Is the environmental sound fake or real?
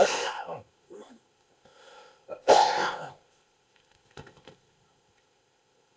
fake